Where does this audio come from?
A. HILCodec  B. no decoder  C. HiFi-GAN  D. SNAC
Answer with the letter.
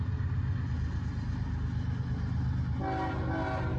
B